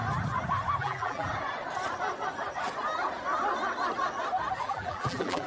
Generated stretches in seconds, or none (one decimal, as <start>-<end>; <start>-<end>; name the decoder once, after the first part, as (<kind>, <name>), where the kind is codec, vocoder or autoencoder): 0.8-1.3 (vocoder, BigVGAN v2); 4.6-5.5